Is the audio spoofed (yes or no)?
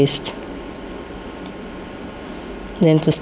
no